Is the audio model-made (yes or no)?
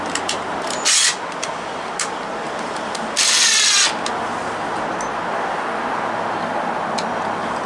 no